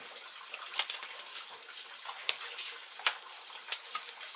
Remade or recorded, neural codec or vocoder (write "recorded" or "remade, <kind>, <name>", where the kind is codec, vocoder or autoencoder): recorded